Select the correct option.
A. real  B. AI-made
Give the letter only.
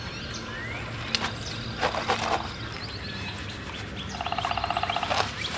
A